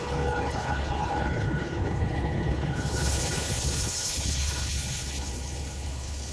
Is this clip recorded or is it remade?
remade